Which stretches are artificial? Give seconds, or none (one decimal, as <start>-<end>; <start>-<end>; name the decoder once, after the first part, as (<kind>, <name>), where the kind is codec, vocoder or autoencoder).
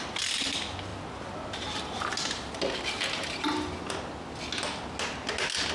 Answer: none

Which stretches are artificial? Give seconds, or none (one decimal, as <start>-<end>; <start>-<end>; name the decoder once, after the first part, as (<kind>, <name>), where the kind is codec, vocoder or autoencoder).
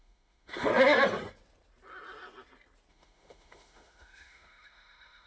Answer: 0.0-0.7 (autoencoder, DAC-VAE); 2.9-5.3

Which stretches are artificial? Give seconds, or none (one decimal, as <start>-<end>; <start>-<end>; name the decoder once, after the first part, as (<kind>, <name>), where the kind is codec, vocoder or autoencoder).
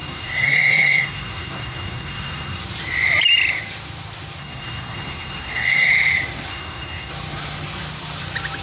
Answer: 0.0-2.6 (codec, SNAC); 4.4-5.9; 6.5-7.1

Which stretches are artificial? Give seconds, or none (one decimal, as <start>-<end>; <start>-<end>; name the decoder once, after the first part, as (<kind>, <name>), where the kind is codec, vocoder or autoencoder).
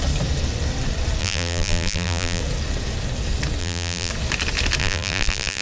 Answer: 1.2-2.4 (vocoder, BigVGAN v2); 3.6-4.1; 4.8-5.6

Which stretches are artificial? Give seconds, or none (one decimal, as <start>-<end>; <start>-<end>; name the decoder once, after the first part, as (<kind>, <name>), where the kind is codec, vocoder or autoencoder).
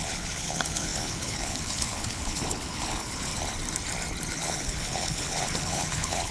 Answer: 0.0-3.3 (codec, HILCodec); 4.3-6.3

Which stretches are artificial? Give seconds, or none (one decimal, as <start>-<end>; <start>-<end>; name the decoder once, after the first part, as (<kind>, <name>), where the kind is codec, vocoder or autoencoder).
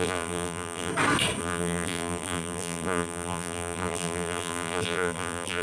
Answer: 0.0-0.9 (vocoder, BigVGAN v2); 1.4-5.6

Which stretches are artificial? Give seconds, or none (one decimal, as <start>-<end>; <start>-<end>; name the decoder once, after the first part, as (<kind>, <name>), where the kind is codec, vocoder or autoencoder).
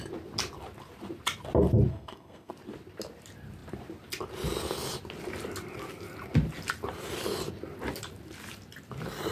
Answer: 1.9-2.5 (codec, SNAC)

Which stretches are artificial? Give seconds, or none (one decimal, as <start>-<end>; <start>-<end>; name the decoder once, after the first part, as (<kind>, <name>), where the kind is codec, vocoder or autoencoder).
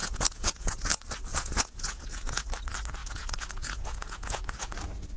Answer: 0.0-0.9 (vocoder, Vocos); 1.3-2.4; 3.0-4.7